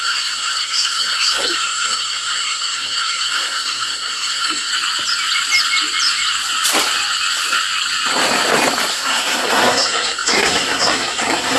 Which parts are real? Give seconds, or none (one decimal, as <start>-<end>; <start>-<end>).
4.7-8.9